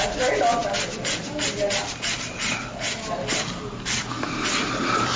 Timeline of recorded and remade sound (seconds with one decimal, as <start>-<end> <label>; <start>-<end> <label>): 0.0-5.2 recorded